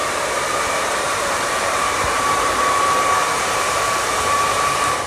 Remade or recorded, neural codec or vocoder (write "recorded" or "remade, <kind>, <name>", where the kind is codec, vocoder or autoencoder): remade, vocoder, BigVGAN v2